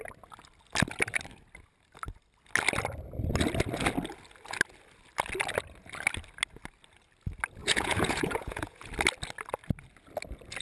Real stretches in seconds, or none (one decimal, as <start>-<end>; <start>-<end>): 0.0-7.6; 8.9-10.6